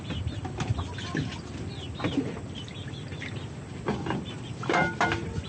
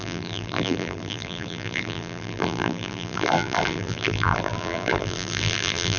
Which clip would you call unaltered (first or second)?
first